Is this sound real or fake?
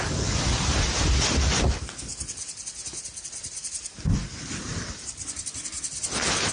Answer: real